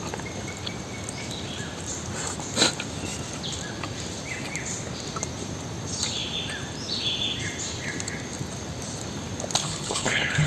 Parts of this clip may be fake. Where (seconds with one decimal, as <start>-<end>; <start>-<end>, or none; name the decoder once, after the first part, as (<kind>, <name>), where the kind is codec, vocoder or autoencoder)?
9.6-10.5 (codec, HILCodec)